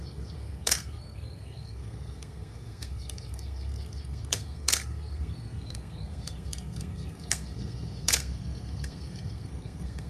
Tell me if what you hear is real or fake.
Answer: fake